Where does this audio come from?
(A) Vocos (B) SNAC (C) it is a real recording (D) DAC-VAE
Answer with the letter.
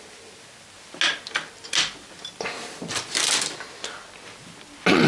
C